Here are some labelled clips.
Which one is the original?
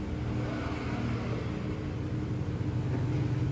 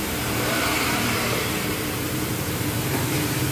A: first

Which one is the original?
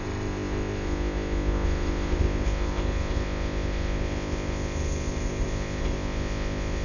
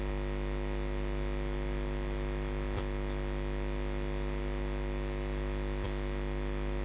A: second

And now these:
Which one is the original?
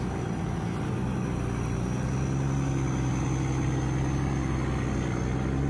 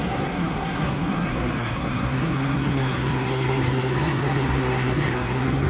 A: first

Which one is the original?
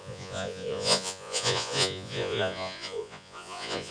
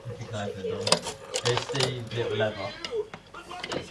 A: second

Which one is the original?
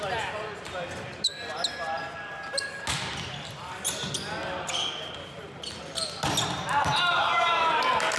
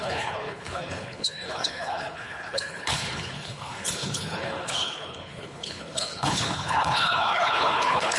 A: first